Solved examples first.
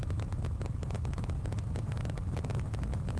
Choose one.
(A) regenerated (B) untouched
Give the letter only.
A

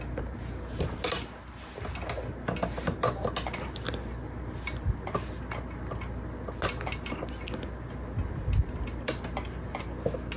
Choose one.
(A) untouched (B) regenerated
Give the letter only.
A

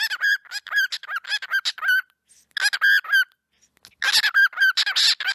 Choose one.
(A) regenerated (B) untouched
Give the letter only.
B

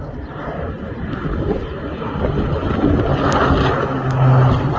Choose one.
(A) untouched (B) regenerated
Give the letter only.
A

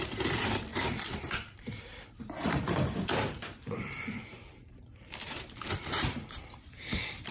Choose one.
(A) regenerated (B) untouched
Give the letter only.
A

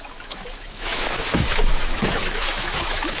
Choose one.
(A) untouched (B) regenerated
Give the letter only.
B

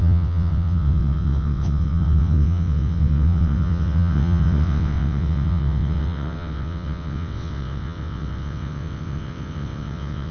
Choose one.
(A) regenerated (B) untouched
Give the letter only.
A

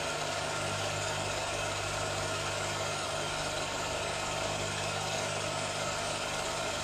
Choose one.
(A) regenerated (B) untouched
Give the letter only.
A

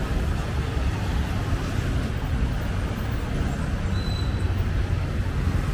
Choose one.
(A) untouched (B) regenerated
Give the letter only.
A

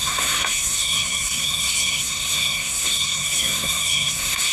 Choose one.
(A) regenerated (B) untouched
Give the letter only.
A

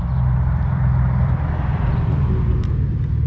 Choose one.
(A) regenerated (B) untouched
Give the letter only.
A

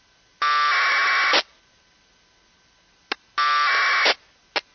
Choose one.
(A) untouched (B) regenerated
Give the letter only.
A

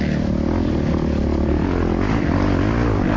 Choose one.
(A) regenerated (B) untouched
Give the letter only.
B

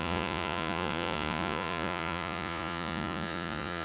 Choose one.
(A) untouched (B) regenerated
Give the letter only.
B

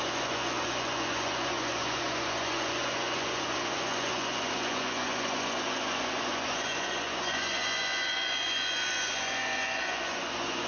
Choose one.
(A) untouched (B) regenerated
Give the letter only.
B